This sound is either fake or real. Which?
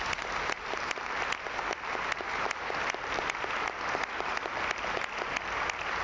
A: real